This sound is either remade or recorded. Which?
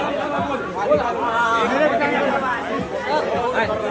recorded